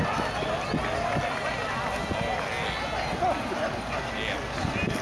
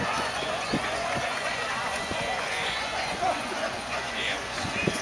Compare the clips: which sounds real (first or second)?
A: first